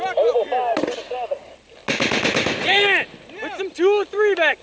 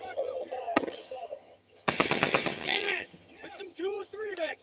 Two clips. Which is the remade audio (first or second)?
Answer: second